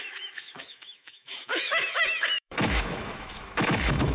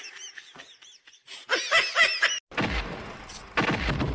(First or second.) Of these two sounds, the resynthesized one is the first